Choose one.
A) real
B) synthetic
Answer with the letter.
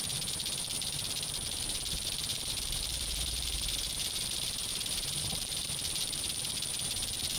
B